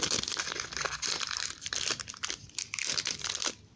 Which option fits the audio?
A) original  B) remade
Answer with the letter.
A